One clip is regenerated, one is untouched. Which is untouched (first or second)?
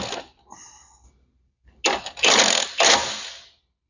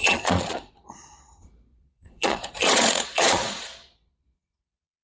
first